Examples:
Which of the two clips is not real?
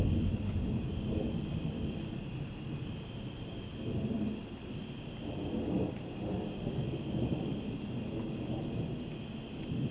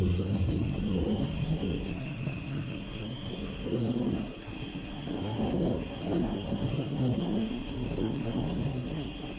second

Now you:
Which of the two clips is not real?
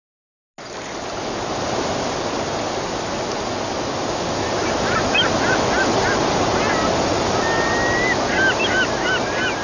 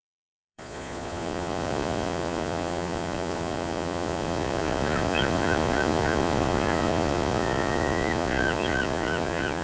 second